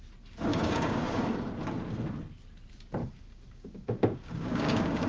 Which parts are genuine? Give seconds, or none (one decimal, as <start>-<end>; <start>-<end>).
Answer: 0.0-0.5; 1.5-3.0